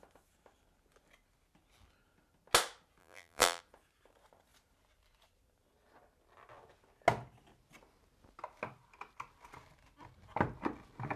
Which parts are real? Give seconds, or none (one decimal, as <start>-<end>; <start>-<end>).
0.0-3.0; 3.6-11.2